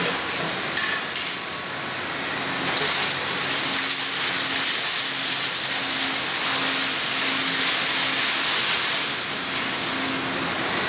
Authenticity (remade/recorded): recorded